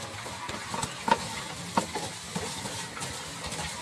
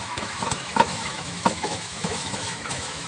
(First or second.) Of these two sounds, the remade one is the second